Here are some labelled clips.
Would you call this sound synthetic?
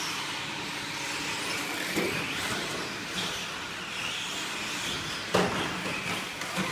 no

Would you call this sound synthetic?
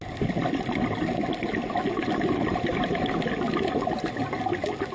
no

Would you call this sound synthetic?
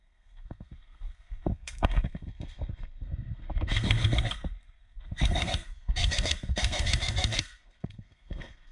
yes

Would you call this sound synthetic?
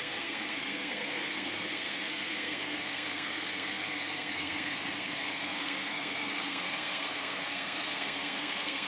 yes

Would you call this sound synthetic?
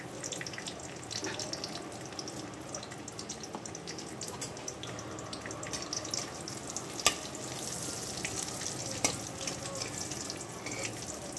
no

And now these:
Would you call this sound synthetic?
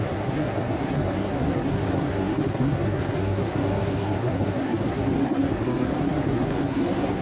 yes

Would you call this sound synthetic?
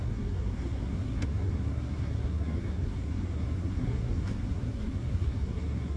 yes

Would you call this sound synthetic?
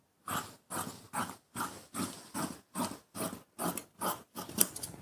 no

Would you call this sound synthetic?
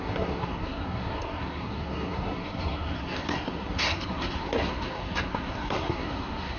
yes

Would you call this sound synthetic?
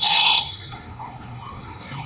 yes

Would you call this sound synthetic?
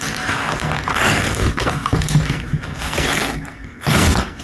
yes